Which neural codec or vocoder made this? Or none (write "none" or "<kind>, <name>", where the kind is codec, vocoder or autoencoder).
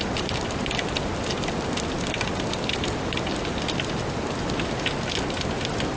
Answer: none